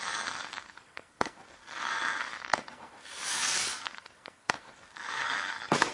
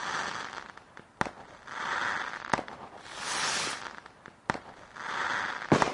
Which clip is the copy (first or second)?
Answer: first